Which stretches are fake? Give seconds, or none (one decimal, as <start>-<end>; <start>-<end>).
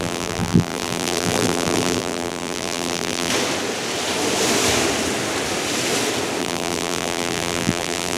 0.0-3.3; 6.4-8.2